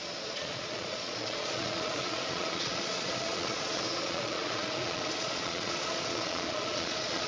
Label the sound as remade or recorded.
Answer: remade